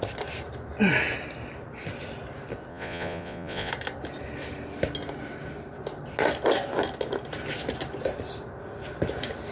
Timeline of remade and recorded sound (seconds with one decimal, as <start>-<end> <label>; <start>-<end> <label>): 0.0-2.7 recorded; 2.7-3.7 remade; 3.7-9.5 recorded